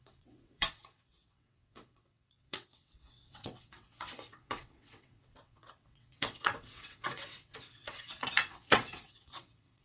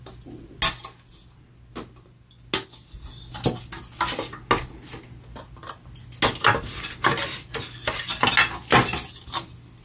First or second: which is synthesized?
first